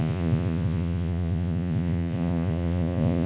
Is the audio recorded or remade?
remade